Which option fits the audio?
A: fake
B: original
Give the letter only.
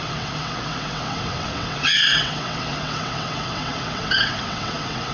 A